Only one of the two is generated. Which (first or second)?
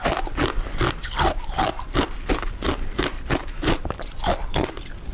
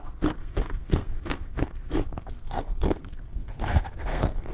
second